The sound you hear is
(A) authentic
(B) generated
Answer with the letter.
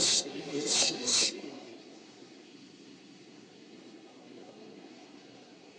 B